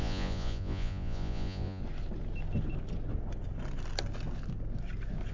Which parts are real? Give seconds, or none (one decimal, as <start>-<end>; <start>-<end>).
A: 1.8-5.3